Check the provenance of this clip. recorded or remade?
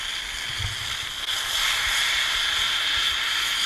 recorded